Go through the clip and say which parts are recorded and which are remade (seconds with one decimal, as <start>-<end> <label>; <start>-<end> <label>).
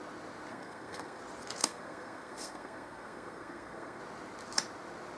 0.0-0.5 recorded; 0.5-1.2 remade; 1.2-1.6 recorded; 1.6-4.0 remade; 4.0-5.2 recorded